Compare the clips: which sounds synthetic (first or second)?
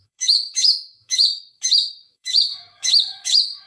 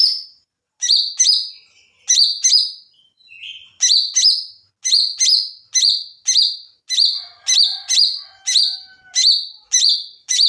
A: first